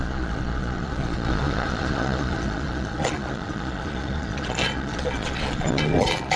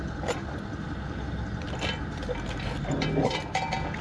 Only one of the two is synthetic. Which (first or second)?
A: first